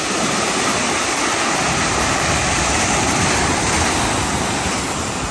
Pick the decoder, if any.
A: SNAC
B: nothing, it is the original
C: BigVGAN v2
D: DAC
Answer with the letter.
B